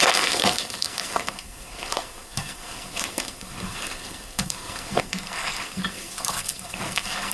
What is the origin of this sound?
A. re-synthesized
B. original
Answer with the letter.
A